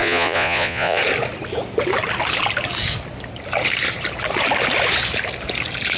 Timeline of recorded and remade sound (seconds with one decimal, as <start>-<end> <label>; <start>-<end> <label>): 0.0-1.0 remade; 1.0-6.0 recorded